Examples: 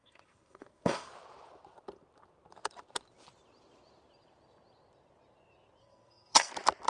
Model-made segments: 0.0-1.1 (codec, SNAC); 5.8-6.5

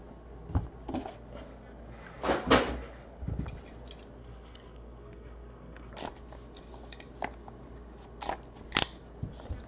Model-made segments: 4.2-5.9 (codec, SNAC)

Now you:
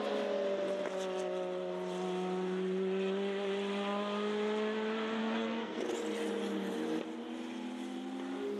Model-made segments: 5.2-5.8 (codec, SNAC)

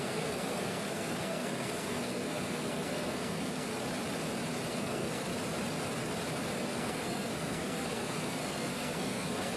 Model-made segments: 0.0-3.7 (codec, SNAC); 4.7-5.3; 6.6-9.6

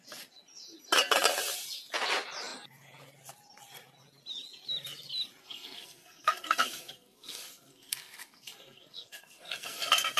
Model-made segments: 5.4-10.2 (codec, SNAC)

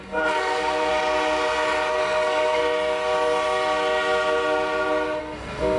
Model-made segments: 0.0-0.9 (codec, SNAC); 1.9-2.6; 5.2-5.8

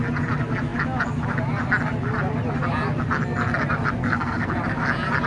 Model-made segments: 4.0-4.5 (codec, SNAC)